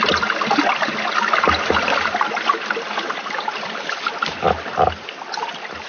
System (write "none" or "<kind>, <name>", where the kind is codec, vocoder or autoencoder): none